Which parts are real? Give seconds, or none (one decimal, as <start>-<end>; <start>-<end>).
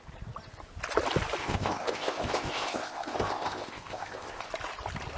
0.0-1.4; 4.5-5.2